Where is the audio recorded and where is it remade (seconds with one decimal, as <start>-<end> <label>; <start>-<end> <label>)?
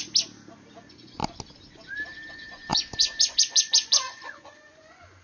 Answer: 0.0-0.7 recorded; 0.7-1.2 remade; 1.2-2.3 recorded; 2.3-5.2 remade